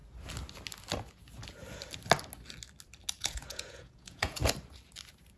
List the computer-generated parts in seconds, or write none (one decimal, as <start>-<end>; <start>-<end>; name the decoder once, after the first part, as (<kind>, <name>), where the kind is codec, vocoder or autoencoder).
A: 3.2-4.4 (vocoder, Vocos)